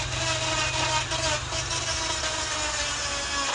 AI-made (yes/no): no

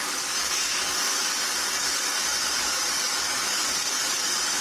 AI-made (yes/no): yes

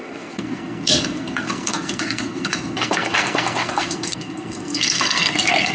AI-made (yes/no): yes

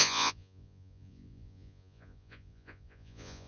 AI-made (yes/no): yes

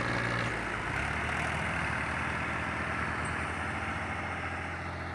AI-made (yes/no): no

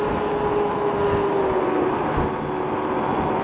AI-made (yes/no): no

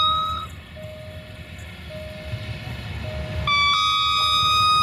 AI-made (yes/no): no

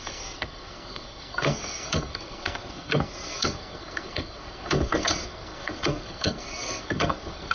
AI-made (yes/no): yes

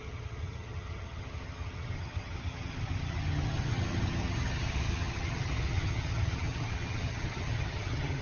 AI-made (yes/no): yes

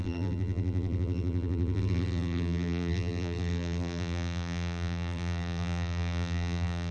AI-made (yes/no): yes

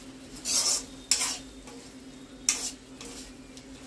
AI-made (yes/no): no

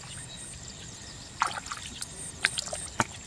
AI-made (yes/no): no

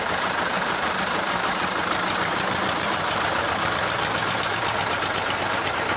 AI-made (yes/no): yes